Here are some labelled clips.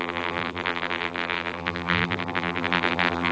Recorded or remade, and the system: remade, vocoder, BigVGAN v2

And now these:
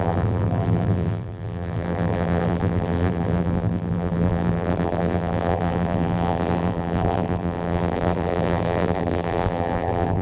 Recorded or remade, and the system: remade, vocoder, BigVGAN v2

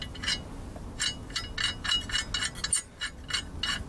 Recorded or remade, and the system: recorded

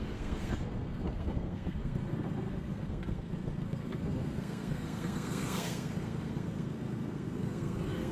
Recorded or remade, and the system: remade, codec, SNAC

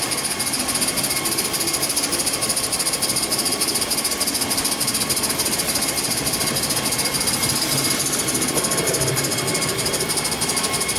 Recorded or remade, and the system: recorded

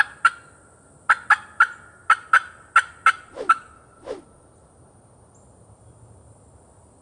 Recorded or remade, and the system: recorded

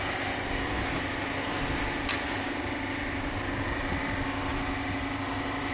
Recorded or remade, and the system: recorded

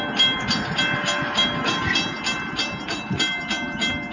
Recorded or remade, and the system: recorded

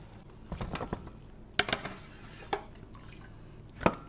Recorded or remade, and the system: recorded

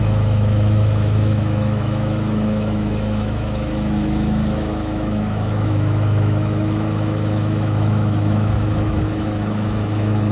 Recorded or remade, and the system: remade, autoencoder, DAC-VAE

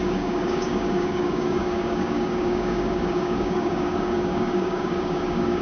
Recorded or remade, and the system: remade, codec, DAC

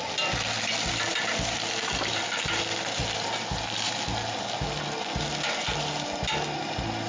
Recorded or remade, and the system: remade, vocoder, BigVGAN v2